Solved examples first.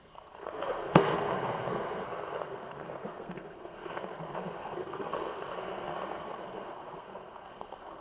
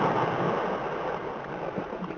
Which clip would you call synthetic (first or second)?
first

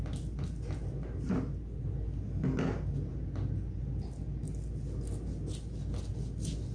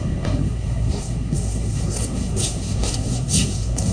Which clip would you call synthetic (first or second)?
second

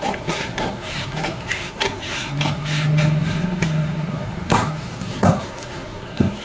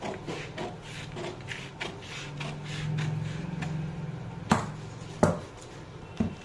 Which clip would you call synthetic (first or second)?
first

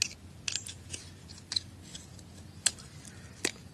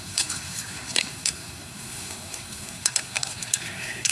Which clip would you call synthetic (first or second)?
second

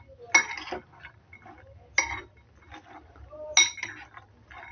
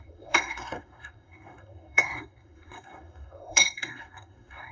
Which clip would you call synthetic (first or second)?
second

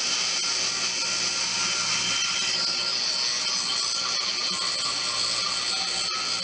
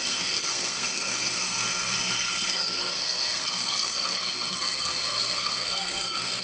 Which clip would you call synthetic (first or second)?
second